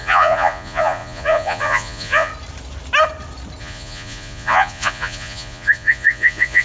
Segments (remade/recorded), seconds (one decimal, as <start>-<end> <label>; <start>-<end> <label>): 0.0-2.3 remade; 2.3-3.6 recorded; 3.6-6.6 remade